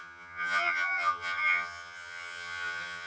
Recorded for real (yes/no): no